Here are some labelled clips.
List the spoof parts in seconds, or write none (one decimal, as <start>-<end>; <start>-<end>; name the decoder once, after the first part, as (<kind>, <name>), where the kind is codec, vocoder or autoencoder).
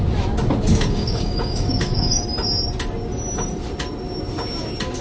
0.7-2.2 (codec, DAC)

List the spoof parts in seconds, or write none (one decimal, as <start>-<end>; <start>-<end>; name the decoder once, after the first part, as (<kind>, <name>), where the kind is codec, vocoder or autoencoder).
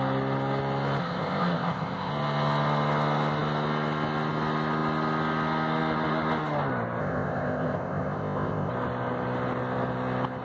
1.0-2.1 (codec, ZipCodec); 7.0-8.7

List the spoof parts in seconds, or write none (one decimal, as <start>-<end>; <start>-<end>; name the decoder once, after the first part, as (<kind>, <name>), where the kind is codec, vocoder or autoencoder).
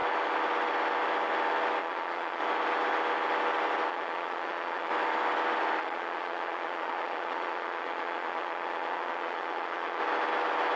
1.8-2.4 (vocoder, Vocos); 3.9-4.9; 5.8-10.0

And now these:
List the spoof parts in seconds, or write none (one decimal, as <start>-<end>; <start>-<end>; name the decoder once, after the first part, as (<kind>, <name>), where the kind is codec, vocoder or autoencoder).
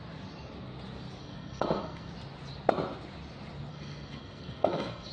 1.2-2.1 (codec, SNAC); 3.7-5.1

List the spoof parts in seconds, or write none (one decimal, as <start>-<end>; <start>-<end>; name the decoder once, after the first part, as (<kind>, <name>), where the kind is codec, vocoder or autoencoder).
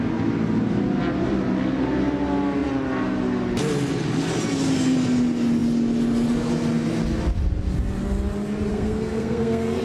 8.7-9.8 (codec, SNAC)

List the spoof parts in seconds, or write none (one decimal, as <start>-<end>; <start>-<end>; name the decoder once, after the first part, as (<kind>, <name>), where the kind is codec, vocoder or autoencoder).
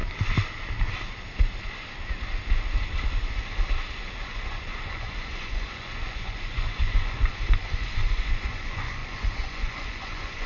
4.2-10.5 (vocoder, Vocos)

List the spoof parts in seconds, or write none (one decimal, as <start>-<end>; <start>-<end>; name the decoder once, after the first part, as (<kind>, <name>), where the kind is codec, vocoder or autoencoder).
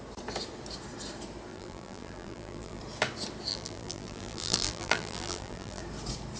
1.5-2.8 (vocoder, BigVGAN v2); 3.5-5.8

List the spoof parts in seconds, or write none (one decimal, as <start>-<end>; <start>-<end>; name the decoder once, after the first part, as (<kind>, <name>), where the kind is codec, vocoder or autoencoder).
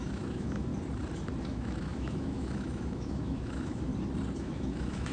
0.0-0.7 (autoencoder, DAC-VAE); 1.4-3.9; 4.4-5.1